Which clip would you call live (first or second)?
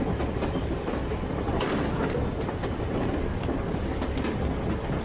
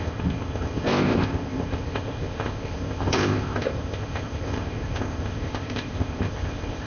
first